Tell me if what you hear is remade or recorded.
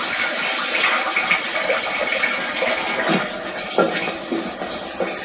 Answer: recorded